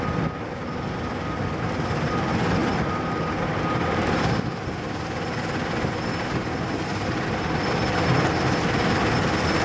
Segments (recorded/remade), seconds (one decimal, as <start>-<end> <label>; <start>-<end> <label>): 0.0-9.6 recorded